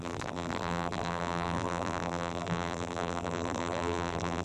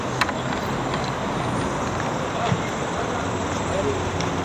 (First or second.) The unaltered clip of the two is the second